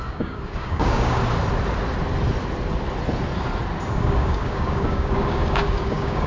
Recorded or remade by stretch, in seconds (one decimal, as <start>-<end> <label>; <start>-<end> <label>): 0.0-1.2 remade; 1.2-3.9 recorded; 3.9-6.3 remade